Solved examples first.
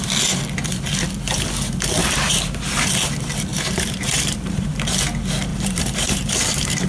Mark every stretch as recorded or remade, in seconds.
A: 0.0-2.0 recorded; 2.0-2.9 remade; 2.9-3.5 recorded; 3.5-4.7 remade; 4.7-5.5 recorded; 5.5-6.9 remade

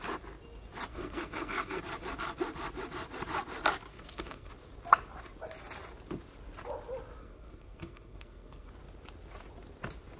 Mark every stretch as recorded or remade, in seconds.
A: 0.0-0.9 recorded; 0.9-1.8 remade; 1.8-3.9 recorded; 3.9-4.5 remade; 4.5-7.2 recorded; 7.2-8.7 remade; 8.7-10.2 recorded

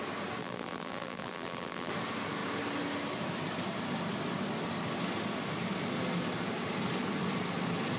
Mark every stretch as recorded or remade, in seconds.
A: 0.0-0.4 recorded; 0.4-1.9 remade; 1.9-8.0 recorded

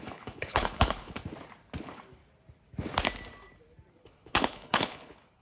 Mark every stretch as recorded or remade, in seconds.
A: 0.0-1.2 remade; 1.2-1.8 recorded; 1.8-2.2 remade; 2.2-3.9 recorded; 3.9-5.4 remade